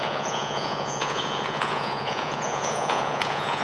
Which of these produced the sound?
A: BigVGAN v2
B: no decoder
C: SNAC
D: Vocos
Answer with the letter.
D